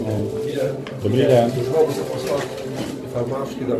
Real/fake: fake